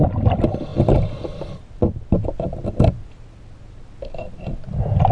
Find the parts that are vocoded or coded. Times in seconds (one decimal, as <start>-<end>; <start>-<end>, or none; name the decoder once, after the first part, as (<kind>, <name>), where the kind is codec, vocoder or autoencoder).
none